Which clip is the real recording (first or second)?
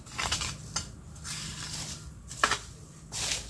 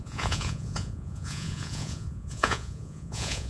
first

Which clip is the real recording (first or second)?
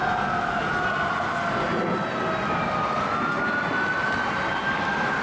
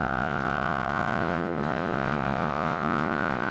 first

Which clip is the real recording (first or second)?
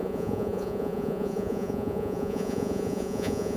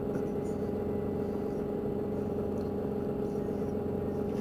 second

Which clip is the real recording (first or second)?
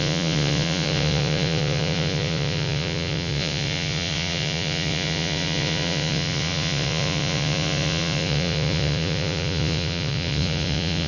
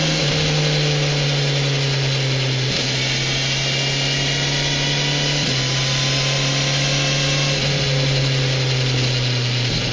second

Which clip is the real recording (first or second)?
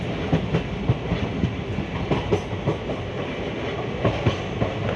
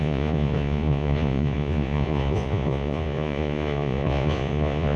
first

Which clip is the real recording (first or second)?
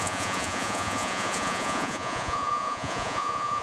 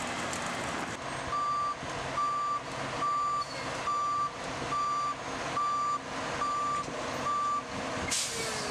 second